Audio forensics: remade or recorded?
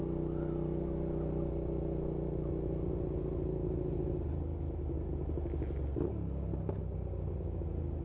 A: recorded